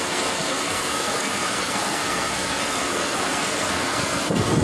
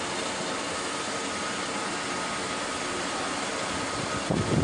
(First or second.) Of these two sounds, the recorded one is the second